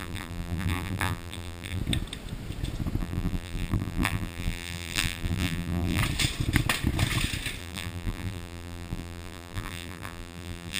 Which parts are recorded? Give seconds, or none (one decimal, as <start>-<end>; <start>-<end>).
1.8-3.0; 6.0-7.6